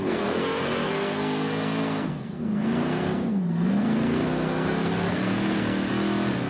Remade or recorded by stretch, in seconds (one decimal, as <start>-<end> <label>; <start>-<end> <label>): 0.0-5.9 remade; 5.9-6.5 recorded